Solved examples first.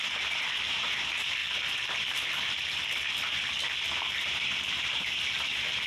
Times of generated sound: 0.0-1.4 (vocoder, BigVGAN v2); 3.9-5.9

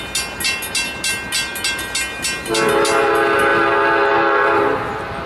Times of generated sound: none

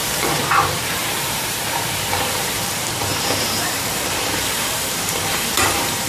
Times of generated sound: 0.0-6.1 (vocoder, BigVGAN v2)

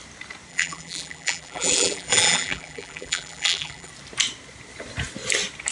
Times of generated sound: 0.5-3.9 (vocoder, BigVGAN v2)

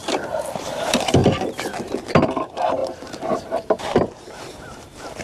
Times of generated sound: 0.6-1.2 (vocoder, BigVGAN v2); 2.2-5.2

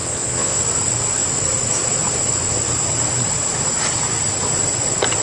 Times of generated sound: 0.0-0.6 (vocoder, Vocos)

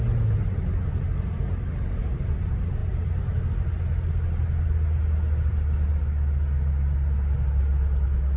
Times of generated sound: none